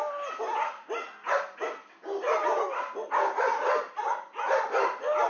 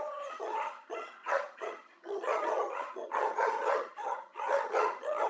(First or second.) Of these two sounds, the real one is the first